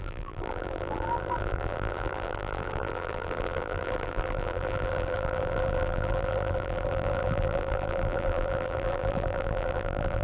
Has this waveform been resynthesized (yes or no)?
yes